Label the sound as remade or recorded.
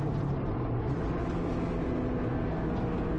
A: recorded